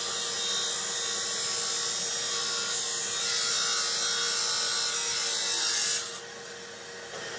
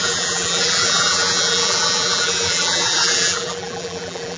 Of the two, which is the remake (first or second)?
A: second